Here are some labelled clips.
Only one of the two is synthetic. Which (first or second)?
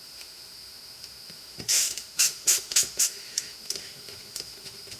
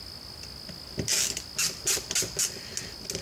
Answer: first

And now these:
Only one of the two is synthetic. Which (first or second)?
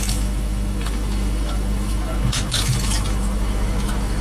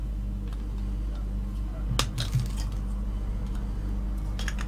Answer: first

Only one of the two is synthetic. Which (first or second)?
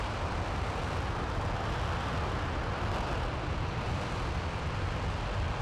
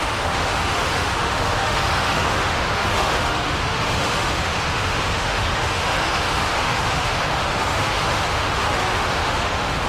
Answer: second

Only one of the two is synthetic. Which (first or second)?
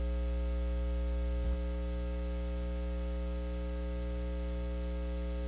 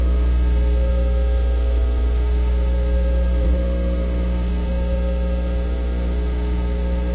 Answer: second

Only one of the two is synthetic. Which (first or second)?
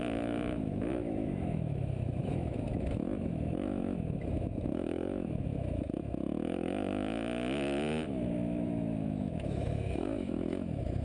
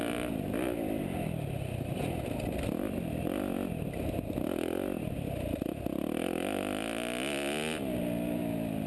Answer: first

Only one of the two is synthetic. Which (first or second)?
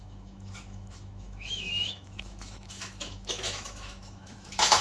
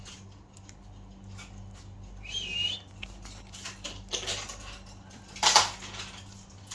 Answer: first